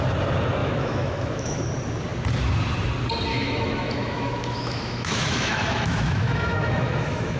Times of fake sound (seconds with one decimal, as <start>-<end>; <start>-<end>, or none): 0.6-1.6; 3.3-7.4